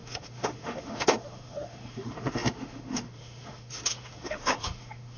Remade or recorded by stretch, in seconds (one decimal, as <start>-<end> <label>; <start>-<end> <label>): 0.0-5.2 remade